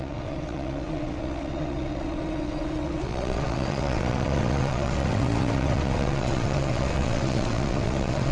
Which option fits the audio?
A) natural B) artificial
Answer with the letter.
B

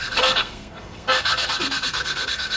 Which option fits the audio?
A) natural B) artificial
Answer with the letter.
B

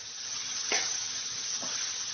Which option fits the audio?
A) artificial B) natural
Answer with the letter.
A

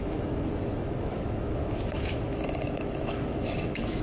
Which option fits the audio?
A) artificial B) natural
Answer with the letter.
A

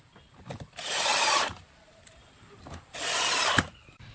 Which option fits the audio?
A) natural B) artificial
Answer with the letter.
A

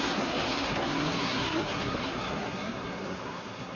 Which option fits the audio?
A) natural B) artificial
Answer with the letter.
B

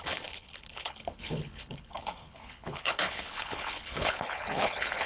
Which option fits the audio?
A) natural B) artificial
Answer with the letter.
B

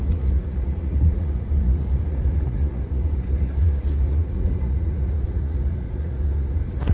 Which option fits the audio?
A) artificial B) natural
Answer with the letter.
A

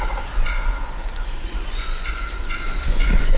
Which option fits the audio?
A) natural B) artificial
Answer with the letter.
B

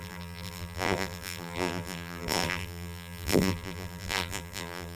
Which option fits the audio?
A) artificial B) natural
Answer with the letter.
A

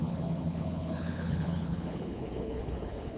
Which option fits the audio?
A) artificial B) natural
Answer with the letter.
A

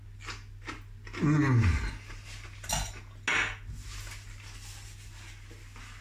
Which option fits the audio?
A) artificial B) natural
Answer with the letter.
B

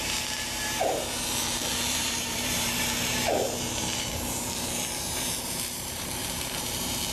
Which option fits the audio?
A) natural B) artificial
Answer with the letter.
B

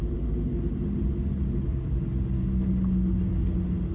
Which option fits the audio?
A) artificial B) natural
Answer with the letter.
B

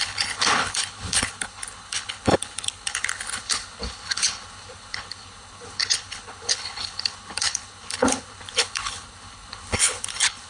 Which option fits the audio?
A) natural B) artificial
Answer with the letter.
B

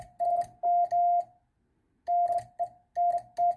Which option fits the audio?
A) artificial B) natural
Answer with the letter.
B